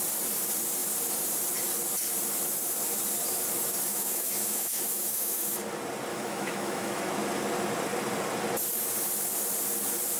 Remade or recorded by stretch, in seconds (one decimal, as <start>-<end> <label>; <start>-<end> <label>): 0.0-3.9 recorded; 3.9-5.5 remade; 5.5-6.1 recorded; 6.1-7.0 remade; 7.0-10.2 recorded